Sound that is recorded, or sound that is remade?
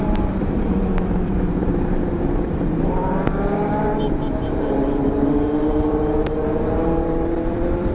remade